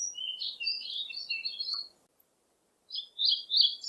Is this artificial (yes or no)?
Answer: no